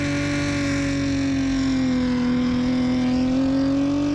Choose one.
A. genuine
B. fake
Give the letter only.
A